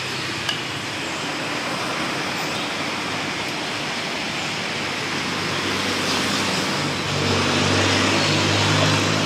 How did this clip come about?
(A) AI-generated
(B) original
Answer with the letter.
B